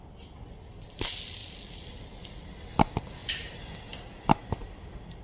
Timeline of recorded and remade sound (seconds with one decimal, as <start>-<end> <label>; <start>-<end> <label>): 0.0-1.4 recorded; 1.4-2.7 remade; 2.7-3.2 recorded; 3.2-3.9 remade; 3.9-5.2 recorded